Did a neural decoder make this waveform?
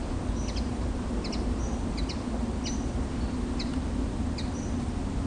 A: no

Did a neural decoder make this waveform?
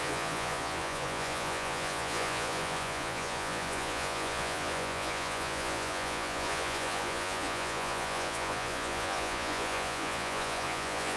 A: yes